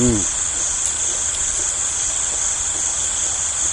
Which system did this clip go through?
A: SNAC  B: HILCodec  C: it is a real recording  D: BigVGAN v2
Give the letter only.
C